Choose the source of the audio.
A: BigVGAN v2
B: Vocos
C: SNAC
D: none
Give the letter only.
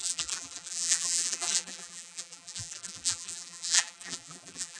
A